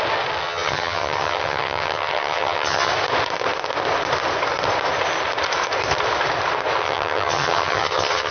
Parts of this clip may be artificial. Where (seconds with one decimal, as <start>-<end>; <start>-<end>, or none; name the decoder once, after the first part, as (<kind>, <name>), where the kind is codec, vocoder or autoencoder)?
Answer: 0.4-2.9 (vocoder, HiFi-GAN); 6.8-8.3